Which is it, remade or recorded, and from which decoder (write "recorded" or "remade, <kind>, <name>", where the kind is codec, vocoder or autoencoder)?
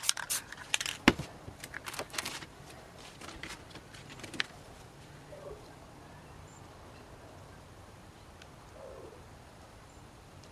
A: remade, vocoder, BigVGAN v2